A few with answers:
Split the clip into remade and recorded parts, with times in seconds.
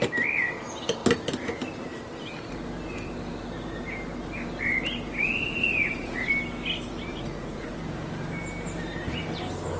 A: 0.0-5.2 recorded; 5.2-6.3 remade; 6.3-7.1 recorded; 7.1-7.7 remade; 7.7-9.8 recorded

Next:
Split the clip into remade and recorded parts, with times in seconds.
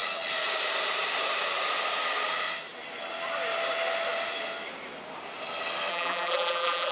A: 0.0-5.9 recorded; 5.9-6.9 remade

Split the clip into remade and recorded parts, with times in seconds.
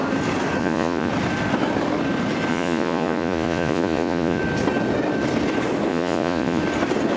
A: 0.0-0.6 recorded; 0.6-1.1 remade; 1.1-2.5 recorded; 2.5-4.4 remade; 4.4-5.9 recorded; 5.9-6.6 remade; 6.6-7.2 recorded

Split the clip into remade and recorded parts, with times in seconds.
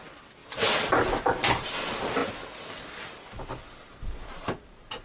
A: 0.0-2.2 recorded; 2.2-3.8 remade; 3.8-5.0 recorded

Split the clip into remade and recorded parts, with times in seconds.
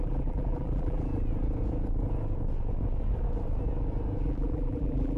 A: 0.0-1.1 remade; 1.1-4.2 recorded; 4.2-5.2 remade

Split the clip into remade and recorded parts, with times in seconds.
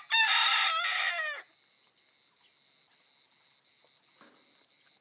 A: 0.0-0.5 recorded; 0.5-1.1 remade; 1.1-5.0 recorded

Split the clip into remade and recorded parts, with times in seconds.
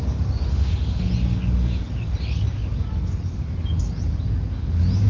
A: 0.0-0.5 recorded; 0.5-1.1 remade; 1.1-5.1 recorded